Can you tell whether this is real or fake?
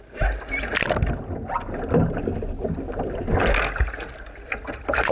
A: real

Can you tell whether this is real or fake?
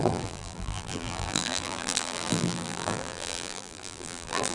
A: fake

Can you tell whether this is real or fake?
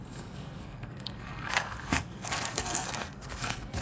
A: fake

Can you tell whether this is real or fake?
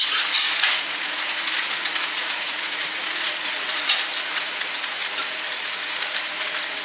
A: fake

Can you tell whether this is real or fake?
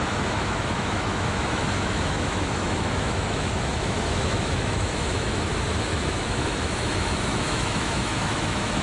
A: fake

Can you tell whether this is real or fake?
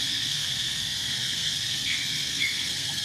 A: fake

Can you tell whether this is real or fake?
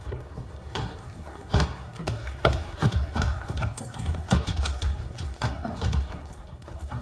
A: fake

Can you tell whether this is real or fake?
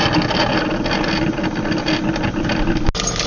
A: real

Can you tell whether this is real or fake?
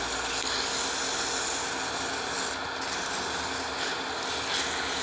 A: real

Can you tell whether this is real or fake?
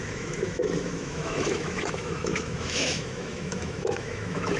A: fake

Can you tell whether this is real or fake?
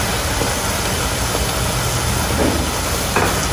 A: real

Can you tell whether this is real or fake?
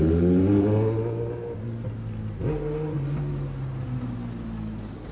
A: real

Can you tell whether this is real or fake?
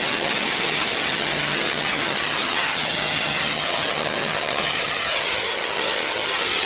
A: fake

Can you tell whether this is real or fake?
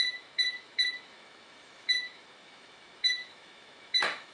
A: fake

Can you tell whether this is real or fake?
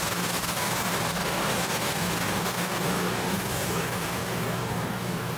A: fake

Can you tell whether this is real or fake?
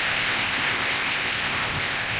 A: fake